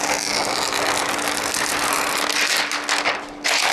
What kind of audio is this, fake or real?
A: real